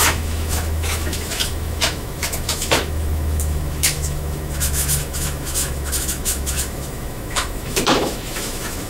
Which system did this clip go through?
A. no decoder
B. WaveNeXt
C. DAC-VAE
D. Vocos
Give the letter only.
C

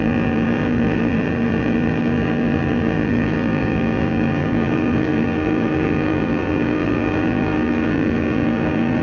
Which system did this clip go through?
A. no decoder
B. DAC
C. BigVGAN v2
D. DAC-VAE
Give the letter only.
C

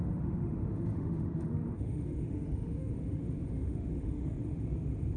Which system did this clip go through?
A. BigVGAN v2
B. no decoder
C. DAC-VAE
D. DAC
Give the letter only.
C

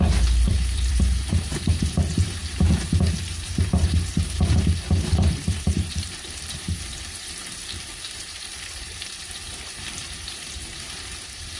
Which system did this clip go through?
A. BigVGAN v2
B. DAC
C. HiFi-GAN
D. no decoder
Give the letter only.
A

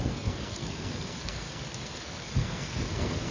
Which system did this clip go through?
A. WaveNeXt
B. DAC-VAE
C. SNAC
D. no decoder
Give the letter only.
C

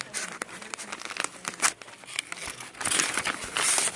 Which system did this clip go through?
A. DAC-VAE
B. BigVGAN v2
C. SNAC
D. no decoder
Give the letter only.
D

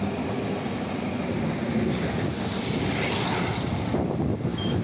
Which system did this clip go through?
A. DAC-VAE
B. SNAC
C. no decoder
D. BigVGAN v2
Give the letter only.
C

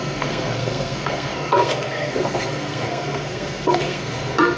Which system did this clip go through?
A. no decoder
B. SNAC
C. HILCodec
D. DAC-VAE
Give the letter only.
B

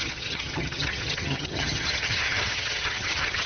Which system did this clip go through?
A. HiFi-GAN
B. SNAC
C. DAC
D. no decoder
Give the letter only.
A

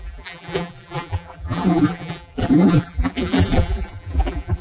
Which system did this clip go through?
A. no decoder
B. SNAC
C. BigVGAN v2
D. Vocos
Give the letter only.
C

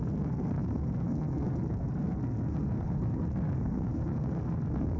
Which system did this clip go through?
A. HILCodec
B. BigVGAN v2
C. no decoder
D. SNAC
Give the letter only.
D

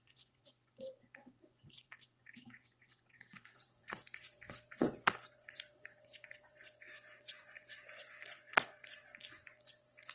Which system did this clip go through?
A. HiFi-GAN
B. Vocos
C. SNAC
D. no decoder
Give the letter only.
B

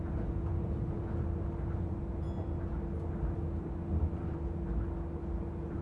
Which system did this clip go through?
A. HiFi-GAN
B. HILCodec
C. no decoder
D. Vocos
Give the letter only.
C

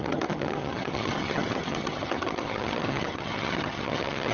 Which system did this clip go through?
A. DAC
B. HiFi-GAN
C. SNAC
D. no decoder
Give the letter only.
B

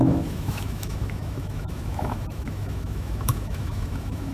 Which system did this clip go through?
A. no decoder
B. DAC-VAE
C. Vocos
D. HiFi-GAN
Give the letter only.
B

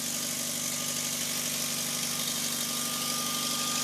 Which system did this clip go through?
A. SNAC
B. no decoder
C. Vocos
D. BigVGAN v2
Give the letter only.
B